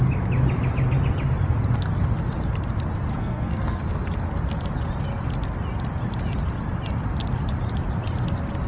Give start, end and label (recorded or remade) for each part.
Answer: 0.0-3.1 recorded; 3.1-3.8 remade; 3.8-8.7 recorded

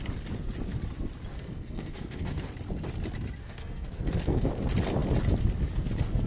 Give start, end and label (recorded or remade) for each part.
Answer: 0.0-1.3 recorded; 1.3-2.5 remade; 2.5-3.4 recorded; 3.4-4.5 remade; 4.5-6.3 recorded